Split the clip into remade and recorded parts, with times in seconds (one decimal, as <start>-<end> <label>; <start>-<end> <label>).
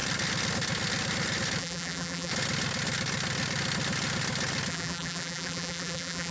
0.0-1.6 recorded; 1.6-2.3 remade; 2.3-4.7 recorded; 4.7-6.3 remade